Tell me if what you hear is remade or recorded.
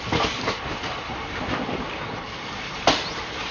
recorded